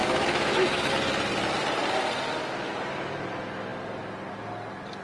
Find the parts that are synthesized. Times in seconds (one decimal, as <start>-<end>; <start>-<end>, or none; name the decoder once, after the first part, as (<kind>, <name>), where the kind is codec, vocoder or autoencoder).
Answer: 0.0-0.9 (autoencoder, DAC-VAE)